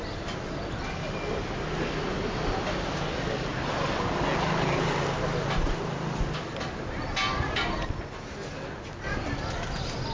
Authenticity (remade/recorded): recorded